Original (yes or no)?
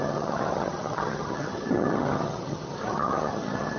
no